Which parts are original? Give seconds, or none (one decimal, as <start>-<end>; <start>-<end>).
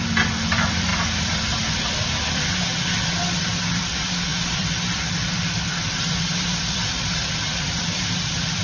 none